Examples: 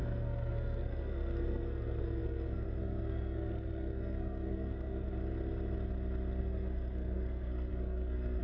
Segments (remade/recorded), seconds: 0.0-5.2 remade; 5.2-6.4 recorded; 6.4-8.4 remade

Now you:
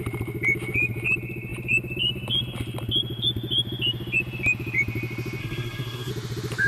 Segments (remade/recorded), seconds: 0.0-5.4 recorded; 5.4-6.1 remade; 6.1-6.7 recorded